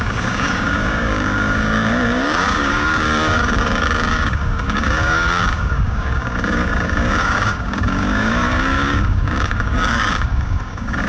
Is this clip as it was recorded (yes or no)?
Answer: no